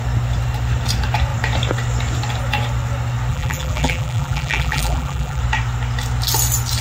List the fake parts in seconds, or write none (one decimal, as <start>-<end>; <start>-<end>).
3.3-5.4